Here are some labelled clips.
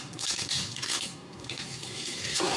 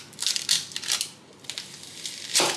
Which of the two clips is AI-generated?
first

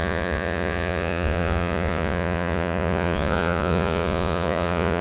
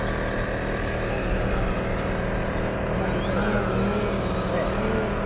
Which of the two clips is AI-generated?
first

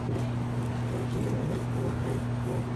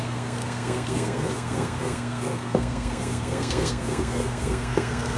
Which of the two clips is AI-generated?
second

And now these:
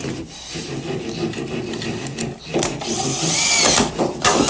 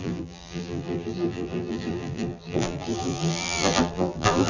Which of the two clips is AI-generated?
second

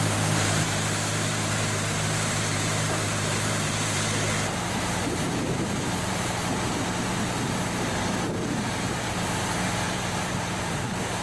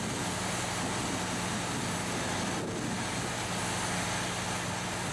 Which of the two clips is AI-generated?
first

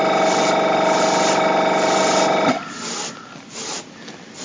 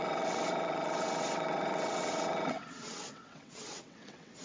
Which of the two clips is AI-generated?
second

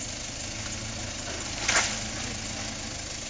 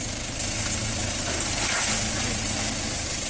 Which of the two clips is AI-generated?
second